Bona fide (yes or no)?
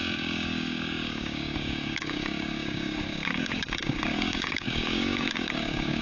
no